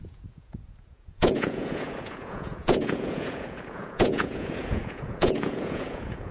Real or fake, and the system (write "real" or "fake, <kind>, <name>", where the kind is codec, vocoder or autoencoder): fake, vocoder, Vocos